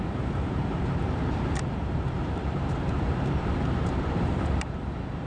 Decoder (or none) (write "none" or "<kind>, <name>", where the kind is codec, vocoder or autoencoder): vocoder, BigVGAN v2